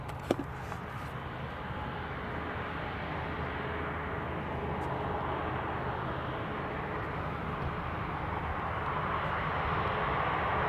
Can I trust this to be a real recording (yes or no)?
yes